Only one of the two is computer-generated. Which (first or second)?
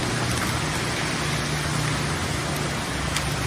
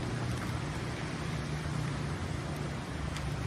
second